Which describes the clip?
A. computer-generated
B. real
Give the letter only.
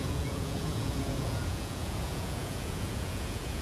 A